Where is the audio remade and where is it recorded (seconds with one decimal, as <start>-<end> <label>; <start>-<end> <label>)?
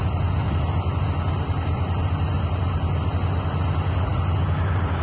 0.0-5.0 recorded